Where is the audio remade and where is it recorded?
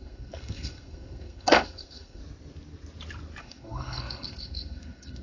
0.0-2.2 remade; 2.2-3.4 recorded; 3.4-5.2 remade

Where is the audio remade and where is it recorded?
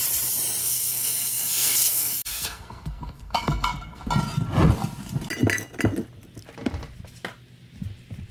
0.0-0.6 recorded; 0.6-4.1 remade; 4.1-8.3 recorded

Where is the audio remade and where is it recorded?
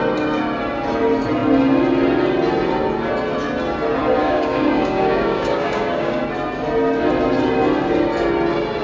0.0-4.2 recorded; 4.2-6.2 remade; 6.2-8.8 recorded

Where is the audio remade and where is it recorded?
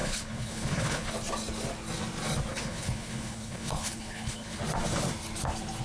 0.0-1.1 remade; 1.1-2.5 recorded; 2.5-4.6 remade; 4.6-5.8 recorded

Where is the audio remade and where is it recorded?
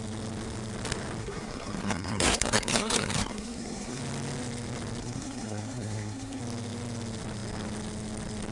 0.0-1.2 recorded; 1.2-4.0 remade; 4.0-5.0 recorded; 5.0-6.4 remade; 6.4-8.5 recorded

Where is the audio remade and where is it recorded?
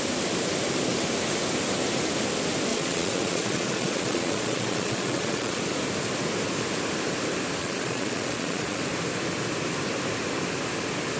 0.0-2.7 recorded; 2.7-5.6 remade; 5.6-7.6 recorded; 7.6-8.8 remade; 8.8-11.2 recorded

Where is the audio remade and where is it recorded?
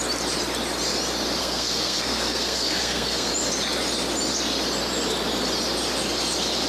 0.0-1.4 recorded; 1.4-3.3 remade; 3.3-6.7 recorded